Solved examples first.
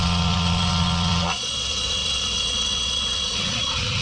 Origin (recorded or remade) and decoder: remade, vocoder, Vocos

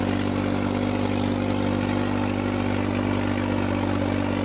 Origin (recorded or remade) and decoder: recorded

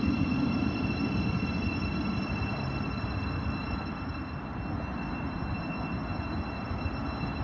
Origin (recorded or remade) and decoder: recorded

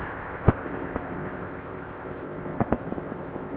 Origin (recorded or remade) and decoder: remade, codec, ZipCodec